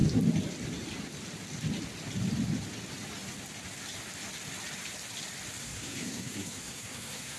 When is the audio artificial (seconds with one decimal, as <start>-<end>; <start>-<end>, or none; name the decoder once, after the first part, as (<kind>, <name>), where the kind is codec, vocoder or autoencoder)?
5.6-7.4 (codec, SNAC)